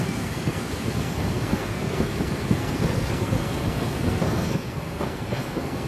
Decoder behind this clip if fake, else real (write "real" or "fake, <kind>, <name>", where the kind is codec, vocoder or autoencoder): fake, codec, SNAC